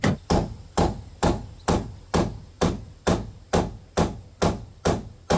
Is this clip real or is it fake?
real